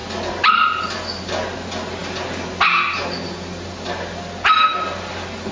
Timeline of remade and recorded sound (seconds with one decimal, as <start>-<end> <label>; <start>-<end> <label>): 0.0-5.5 recorded